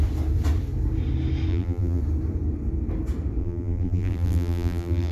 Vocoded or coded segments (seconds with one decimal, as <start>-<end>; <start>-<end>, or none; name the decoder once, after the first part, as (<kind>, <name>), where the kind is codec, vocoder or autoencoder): 1.5-2.0 (vocoder, BigVGAN v2); 3.4-5.1